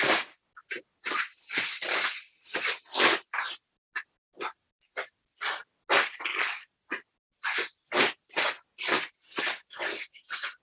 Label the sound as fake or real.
real